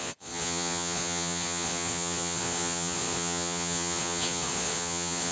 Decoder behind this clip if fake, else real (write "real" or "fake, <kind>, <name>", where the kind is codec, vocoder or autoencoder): fake, vocoder, Vocos